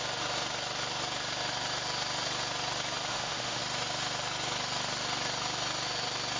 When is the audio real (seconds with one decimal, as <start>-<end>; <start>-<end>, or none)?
0.0-3.1; 3.6-6.4